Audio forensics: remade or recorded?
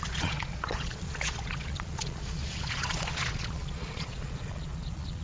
remade